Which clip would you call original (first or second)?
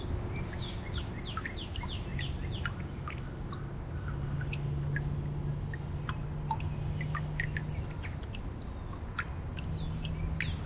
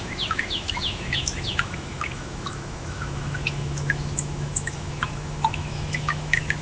first